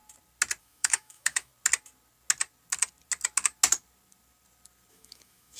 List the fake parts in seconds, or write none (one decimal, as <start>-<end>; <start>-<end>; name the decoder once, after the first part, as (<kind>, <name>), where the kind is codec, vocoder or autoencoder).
0.6-1.5 (autoencoder, DAC-VAE); 4.9-5.6